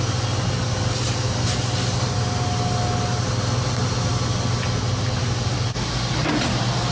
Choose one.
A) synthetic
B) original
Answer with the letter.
B